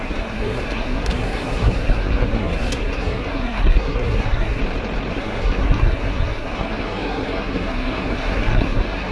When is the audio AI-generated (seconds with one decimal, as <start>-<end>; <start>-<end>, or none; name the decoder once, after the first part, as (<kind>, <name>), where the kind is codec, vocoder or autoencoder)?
0.0-4.6 (codec, SNAC); 5.1-9.1